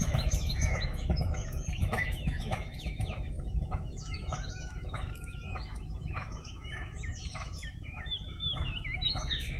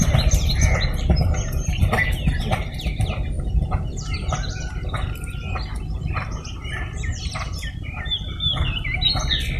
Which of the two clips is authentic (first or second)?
second